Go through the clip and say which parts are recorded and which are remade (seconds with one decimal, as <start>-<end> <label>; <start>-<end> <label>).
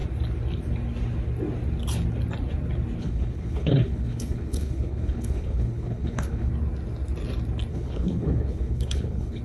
0.0-3.0 recorded; 3.0-6.5 remade; 6.5-7.7 recorded; 7.7-9.4 remade